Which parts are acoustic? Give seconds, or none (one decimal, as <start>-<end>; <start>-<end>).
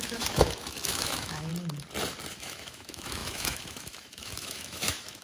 1.5-2.3